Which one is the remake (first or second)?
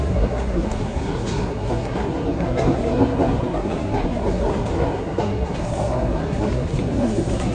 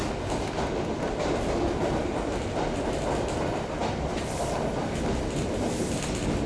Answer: first